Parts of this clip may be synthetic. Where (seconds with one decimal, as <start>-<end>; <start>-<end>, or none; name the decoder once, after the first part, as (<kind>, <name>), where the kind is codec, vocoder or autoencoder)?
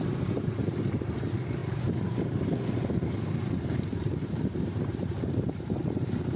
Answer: 0.0-6.4 (vocoder, BigVGAN v2)